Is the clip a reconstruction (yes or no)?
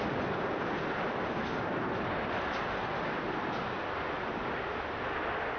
no